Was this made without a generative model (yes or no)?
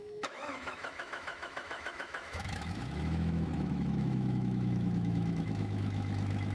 no